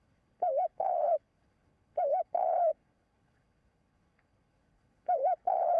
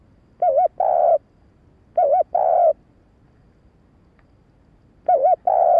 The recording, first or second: second